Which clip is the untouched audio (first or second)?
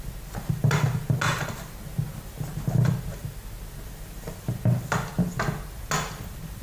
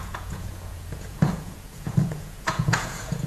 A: first